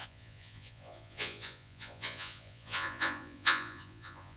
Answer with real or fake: fake